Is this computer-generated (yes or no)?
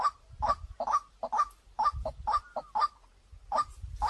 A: yes